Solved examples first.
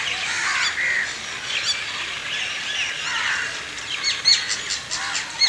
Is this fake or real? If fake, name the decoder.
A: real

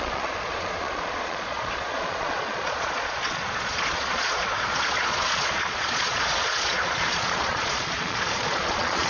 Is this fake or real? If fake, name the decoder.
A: fake, vocoder, Vocos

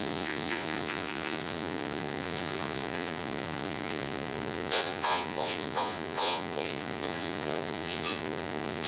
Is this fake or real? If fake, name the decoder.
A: fake, vocoder, Vocos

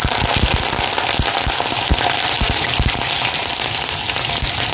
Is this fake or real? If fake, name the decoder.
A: real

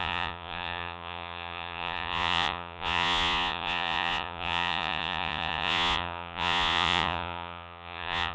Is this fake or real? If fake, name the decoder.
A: fake, vocoder, Vocos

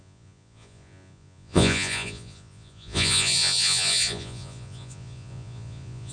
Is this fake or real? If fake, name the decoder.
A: fake, vocoder, Vocos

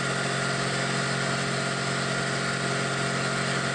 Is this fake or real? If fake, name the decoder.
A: real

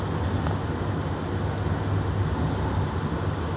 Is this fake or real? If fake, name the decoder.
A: real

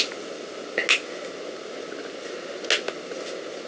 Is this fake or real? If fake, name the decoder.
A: real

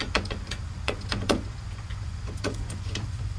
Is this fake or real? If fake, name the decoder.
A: fake, vocoder, Vocos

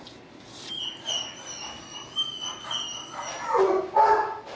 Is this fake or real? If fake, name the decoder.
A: real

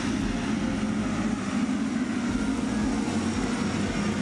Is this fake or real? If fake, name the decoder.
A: real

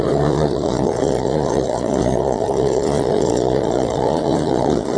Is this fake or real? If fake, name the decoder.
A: fake, vocoder, Vocos